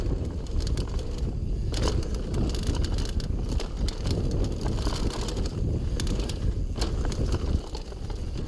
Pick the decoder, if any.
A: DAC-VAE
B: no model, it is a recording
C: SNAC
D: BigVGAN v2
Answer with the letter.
B